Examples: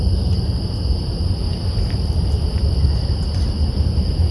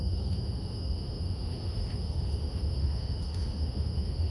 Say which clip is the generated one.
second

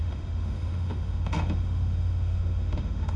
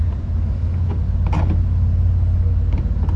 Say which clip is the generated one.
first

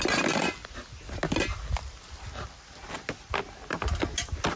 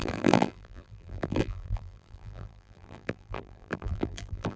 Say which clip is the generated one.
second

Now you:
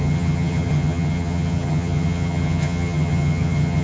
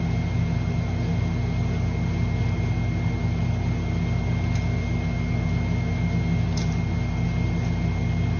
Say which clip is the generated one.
first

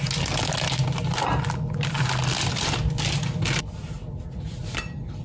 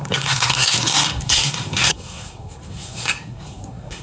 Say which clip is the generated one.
second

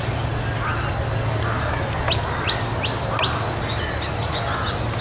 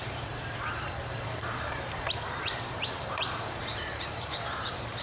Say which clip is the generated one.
second